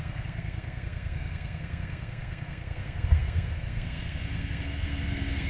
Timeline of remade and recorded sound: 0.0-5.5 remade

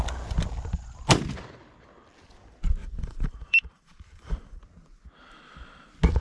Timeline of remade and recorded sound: 0.0-2.8 recorded; 2.8-4.6 remade; 4.6-6.2 recorded

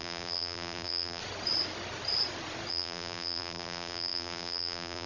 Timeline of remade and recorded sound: 0.0-1.2 remade; 1.2-2.7 recorded; 2.7-5.1 remade

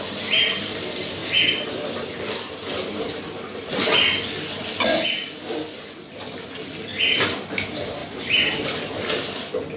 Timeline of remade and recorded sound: 0.0-8.0 recorded; 8.0-8.9 remade; 8.9-9.8 recorded

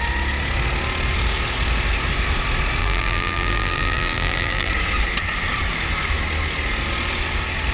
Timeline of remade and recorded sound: 0.0-2.8 recorded; 2.8-4.7 remade; 4.7-7.7 recorded

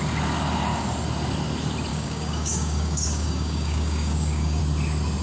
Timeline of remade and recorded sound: 0.0-1.9 recorded; 1.9-4.6 remade; 4.6-5.2 recorded

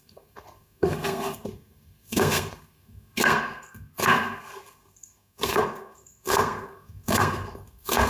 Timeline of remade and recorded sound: 0.0-8.1 remade

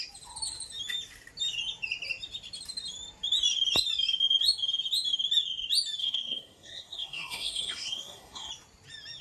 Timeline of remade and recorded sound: 0.0-6.0 recorded; 6.0-8.5 remade; 8.5-9.2 recorded